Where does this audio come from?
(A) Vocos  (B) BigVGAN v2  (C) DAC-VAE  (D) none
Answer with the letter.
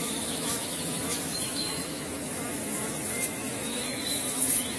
C